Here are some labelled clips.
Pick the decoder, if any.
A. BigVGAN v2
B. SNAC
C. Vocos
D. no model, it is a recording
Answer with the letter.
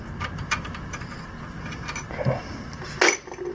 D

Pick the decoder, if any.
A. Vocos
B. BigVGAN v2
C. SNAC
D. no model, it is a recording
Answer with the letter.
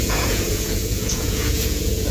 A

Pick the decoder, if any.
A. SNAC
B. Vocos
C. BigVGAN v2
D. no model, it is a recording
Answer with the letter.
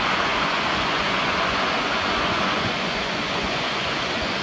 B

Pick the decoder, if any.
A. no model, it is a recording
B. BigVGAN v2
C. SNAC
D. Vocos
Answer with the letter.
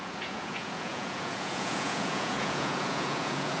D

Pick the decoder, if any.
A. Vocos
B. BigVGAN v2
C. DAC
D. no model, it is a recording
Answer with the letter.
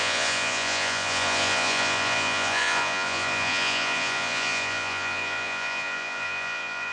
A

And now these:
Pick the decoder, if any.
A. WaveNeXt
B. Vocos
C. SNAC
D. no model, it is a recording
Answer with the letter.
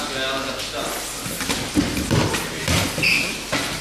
D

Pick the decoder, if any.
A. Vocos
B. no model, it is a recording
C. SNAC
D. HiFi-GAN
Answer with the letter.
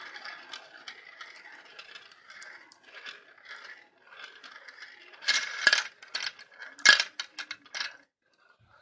B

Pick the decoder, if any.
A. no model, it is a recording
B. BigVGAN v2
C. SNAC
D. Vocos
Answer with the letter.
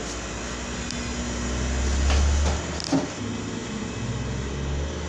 A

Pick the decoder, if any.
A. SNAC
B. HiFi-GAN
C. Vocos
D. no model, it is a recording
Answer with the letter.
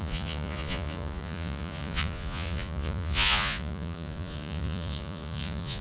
C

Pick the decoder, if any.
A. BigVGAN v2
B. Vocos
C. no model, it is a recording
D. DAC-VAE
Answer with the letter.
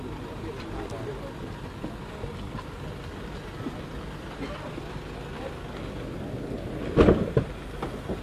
C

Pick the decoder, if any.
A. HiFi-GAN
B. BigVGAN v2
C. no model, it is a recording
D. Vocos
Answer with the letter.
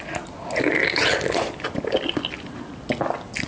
C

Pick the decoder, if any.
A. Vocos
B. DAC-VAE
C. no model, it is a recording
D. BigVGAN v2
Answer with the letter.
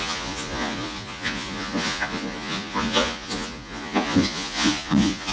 A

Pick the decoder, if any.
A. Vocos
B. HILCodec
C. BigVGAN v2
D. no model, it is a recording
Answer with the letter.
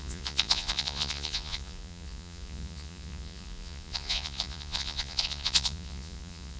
A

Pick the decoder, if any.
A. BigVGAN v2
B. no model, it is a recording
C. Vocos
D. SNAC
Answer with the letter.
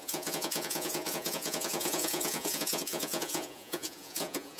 C